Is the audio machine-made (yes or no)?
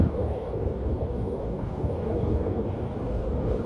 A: yes